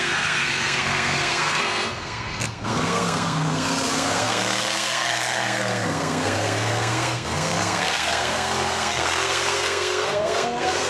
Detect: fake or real fake